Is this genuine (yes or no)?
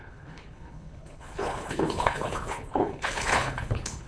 no